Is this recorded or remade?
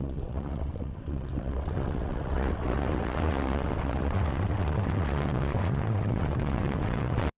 remade